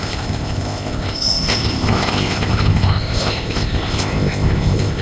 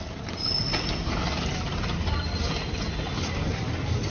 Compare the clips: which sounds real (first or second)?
second